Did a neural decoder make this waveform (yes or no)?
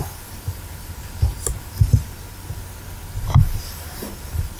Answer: yes